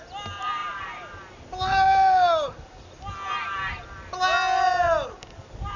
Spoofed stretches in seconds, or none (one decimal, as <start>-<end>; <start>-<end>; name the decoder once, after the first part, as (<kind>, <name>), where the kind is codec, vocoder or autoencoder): none

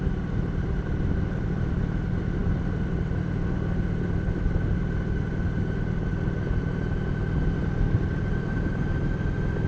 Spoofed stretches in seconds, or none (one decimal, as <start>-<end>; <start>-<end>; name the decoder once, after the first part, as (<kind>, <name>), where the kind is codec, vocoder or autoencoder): none

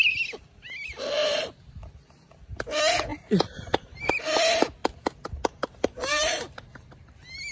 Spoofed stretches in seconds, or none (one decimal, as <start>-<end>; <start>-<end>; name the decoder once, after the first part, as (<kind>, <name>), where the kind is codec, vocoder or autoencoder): 1.2-1.8 (vocoder, BigVGAN v2); 3.1-4.1; 6.1-7.1